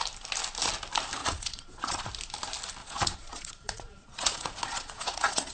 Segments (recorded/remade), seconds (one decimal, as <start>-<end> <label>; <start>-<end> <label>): 0.0-1.2 recorded; 1.2-2.1 remade; 2.1-2.8 recorded; 2.8-5.5 remade